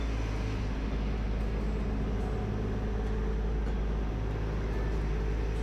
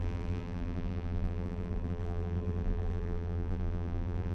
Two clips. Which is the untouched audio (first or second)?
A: first